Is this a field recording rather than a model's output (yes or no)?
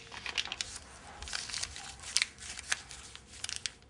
yes